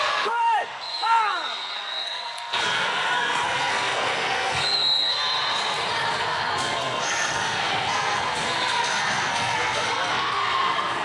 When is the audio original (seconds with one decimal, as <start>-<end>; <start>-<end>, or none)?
5.3-6.1